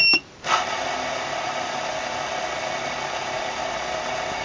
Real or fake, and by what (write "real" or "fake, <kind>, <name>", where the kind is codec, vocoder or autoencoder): real